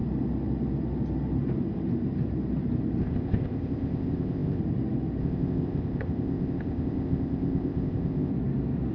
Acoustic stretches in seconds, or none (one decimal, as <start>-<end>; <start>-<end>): 0.0-3.0; 4.6-5.2; 8.3-8.9